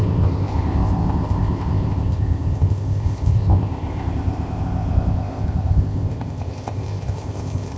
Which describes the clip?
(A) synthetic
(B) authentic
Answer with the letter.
A